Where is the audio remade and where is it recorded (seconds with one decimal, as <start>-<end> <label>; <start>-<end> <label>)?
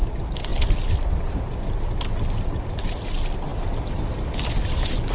0.0-5.1 recorded